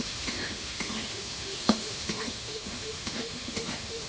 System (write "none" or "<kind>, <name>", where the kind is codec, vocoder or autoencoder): autoencoder, DAC-VAE